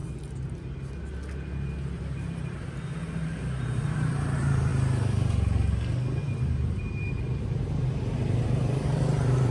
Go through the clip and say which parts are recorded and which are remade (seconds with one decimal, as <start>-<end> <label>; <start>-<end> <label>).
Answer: 0.0-2.4 recorded; 2.4-4.7 remade; 4.7-6.2 recorded; 6.2-9.5 remade